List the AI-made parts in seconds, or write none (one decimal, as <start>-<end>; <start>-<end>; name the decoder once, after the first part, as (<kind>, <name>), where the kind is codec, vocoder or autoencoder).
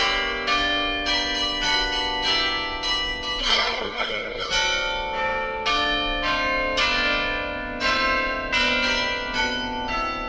3.4-4.5 (codec, SNAC)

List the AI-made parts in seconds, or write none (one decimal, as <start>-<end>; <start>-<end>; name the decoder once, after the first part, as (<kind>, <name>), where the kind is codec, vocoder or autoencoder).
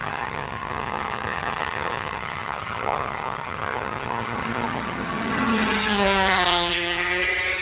0.0-7.6 (vocoder, HiFi-GAN)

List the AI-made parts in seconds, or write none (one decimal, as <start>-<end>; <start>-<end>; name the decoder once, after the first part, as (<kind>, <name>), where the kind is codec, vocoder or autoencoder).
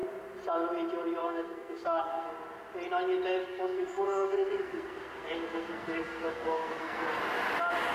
1.2-2.3 (codec, SNAC); 3.4-7.2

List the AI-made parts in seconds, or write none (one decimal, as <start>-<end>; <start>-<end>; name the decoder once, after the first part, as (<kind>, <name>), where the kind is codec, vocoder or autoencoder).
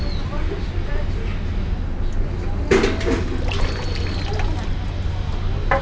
none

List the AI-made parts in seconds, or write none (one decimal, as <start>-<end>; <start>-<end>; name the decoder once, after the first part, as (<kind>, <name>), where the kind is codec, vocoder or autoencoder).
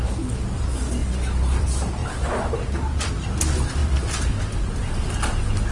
none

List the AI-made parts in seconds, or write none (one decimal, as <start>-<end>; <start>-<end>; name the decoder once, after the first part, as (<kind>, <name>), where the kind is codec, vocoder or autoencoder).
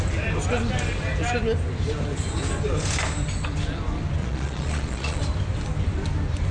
4.2-5.2 (vocoder, Vocos)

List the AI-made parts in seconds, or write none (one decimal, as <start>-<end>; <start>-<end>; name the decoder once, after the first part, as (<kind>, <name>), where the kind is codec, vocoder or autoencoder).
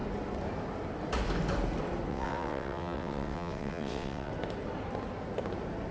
2.1-4.3 (vocoder, WaveNeXt)